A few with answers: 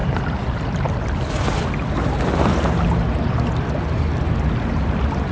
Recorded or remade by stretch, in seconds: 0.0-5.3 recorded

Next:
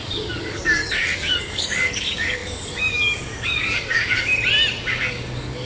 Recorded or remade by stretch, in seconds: 0.0-4.3 remade; 4.3-4.9 recorded; 4.9-5.6 remade

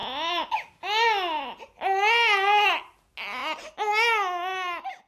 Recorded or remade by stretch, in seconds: 0.0-5.1 recorded

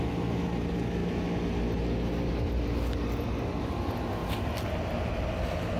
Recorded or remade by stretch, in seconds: 0.0-5.8 recorded

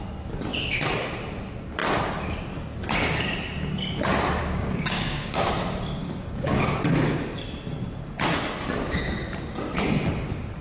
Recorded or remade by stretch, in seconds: 0.0-4.4 recorded; 4.4-5.5 remade; 5.5-6.0 recorded; 6.0-6.8 remade; 6.8-10.6 recorded

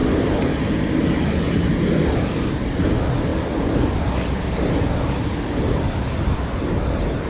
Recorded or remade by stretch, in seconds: 0.0-7.3 recorded

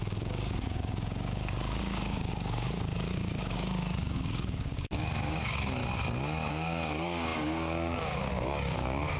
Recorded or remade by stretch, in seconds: 0.0-5.8 remade; 5.8-6.5 recorded; 6.5-9.2 remade